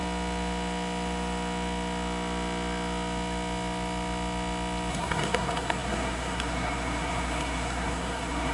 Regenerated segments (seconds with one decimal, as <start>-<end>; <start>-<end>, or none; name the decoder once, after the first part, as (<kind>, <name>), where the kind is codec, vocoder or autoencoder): 4.9-8.5 (codec, SNAC)